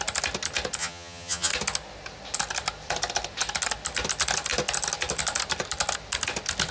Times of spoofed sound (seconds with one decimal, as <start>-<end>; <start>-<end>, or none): 0.8-1.5